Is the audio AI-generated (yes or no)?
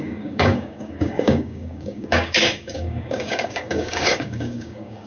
yes